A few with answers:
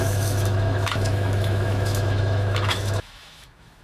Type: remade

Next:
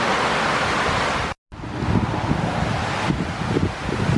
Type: recorded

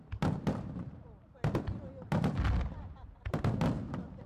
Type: recorded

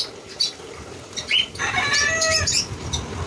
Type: recorded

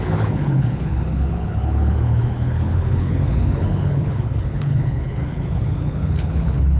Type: remade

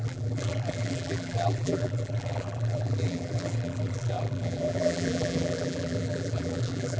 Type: remade